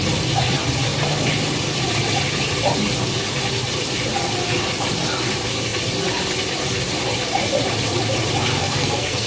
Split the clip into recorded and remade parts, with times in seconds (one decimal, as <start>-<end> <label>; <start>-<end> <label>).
0.0-8.6 recorded; 8.6-9.3 remade